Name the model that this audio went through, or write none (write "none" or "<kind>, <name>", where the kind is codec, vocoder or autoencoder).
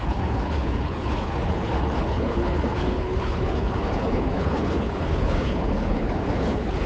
codec, HILCodec